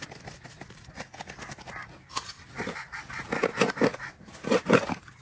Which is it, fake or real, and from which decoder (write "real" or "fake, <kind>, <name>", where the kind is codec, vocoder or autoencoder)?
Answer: real